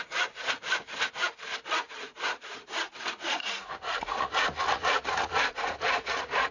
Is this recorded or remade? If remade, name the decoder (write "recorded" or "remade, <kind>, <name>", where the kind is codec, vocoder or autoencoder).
remade, vocoder, Vocos